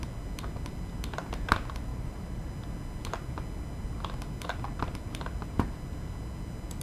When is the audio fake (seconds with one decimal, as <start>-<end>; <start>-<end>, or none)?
1.9-2.5